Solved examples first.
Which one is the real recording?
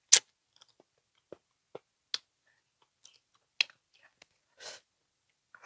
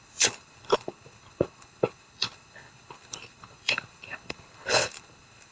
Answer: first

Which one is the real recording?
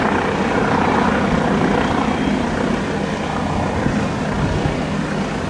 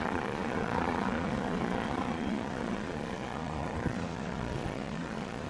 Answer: first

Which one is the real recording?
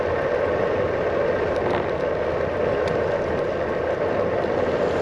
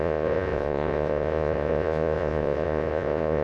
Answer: first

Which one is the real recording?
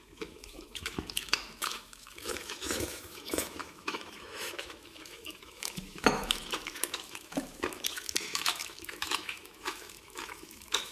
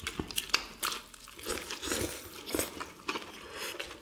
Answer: second